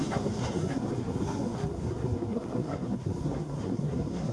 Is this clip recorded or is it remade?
remade